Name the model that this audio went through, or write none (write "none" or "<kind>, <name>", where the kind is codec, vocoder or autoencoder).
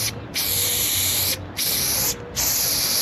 none